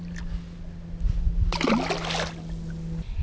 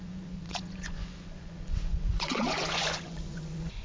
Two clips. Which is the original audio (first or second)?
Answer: first